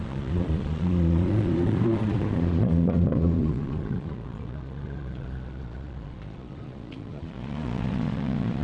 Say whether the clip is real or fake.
fake